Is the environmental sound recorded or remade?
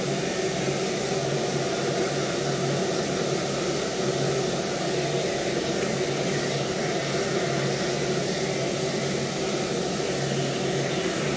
recorded